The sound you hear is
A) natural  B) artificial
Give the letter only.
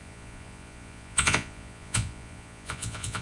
B